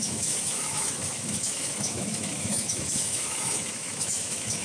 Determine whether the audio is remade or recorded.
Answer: remade